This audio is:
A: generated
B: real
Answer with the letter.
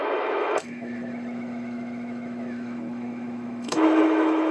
A